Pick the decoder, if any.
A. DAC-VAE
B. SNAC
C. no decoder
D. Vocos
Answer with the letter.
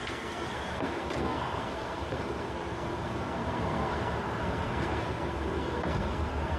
B